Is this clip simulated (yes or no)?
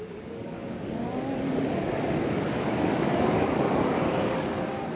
yes